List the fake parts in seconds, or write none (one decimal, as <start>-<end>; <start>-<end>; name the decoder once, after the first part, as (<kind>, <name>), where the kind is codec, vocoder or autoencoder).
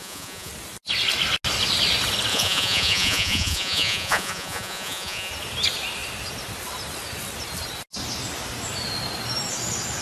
0.0-0.5 (vocoder, Vocos); 2.3-5.3